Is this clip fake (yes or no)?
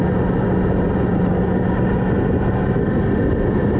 no